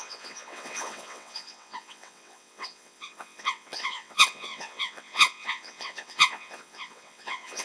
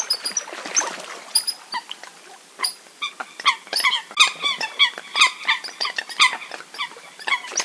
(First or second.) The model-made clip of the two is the first